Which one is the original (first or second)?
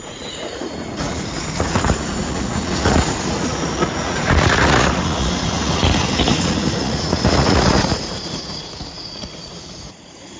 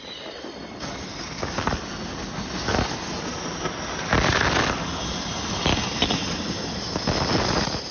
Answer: second